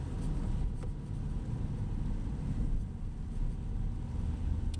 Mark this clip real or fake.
real